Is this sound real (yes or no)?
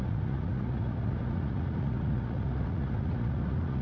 no